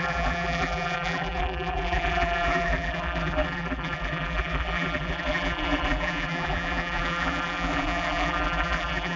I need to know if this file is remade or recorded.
remade